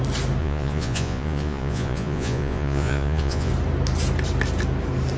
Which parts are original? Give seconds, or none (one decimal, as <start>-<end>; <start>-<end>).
0.0-0.4; 3.5-5.2